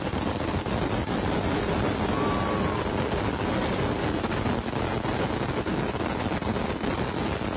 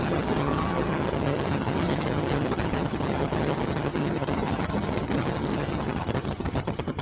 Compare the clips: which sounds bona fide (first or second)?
first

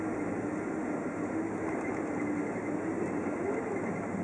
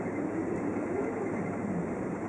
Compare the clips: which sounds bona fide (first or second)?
first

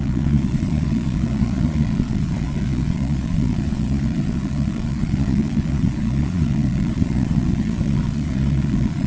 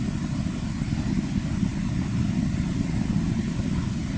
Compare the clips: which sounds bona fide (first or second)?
second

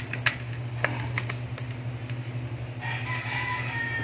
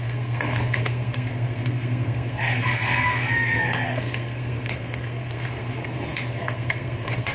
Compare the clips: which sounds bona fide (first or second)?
first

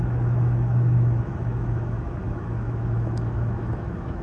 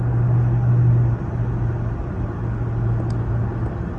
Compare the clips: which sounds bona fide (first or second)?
second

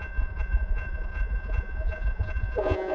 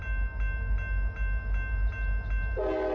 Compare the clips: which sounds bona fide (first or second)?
second